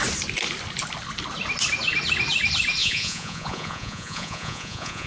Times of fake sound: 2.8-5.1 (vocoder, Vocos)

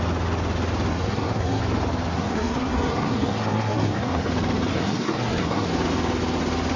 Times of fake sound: 0.9-1.6 (codec, SNAC); 2.1-4.3; 4.7-5.7

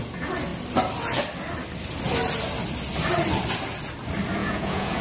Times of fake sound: 4.4-5.0 (vocoder, Vocos)